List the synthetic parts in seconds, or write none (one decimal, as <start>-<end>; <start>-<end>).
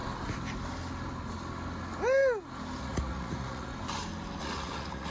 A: 2.8-3.7; 4.4-5.1